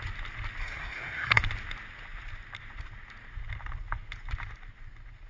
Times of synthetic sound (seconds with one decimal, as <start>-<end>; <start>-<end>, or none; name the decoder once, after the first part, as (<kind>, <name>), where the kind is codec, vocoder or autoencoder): 0.6-1.4 (codec, SNAC)